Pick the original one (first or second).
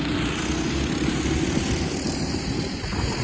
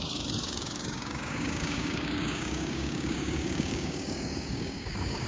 first